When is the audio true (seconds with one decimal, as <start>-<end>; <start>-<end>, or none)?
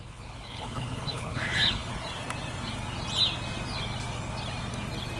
1.9-5.2